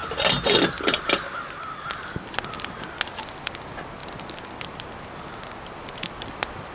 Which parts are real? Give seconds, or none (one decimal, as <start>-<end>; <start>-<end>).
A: 0.0-6.7